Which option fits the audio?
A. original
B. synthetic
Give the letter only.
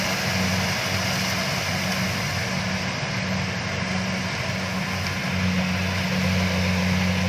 A